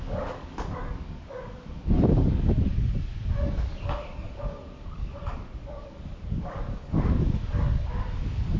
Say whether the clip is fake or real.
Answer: fake